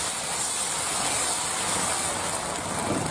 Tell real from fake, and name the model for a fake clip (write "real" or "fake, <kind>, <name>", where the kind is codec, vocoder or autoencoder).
real